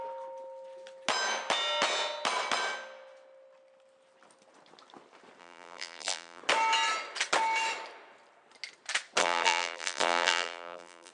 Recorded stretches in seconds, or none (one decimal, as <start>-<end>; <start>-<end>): 0.0-5.4; 6.4-9.2